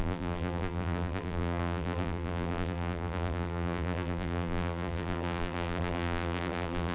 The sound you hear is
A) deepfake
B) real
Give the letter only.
A